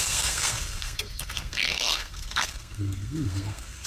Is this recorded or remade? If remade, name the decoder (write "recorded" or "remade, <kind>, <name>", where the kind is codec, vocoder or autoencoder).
remade, codec, SNAC